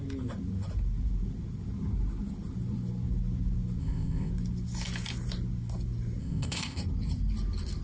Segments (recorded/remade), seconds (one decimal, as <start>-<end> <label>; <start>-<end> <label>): 0.0-3.8 recorded; 3.8-4.3 remade; 4.3-6.2 recorded; 6.2-6.8 remade; 6.8-7.8 recorded